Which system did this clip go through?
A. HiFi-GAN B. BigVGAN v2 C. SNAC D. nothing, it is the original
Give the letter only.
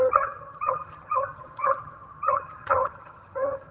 A